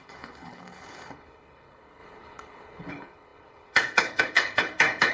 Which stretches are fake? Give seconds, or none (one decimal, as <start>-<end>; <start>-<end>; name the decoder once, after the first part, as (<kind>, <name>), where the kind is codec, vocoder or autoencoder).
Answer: 0.0-5.1 (codec, HILCodec)